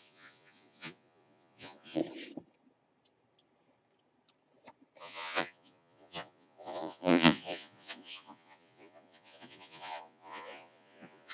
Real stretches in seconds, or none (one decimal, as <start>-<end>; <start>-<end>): 2.0-5.0